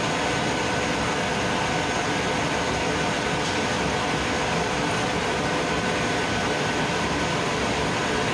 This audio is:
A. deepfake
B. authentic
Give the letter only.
B